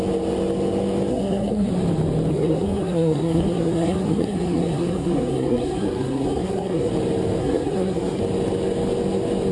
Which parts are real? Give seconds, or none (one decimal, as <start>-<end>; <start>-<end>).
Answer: 0.0-1.1; 1.7-2.3; 6.9-7.4; 8.2-9.5